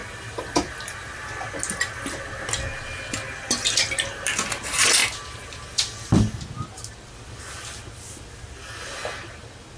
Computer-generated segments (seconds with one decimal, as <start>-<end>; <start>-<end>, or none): none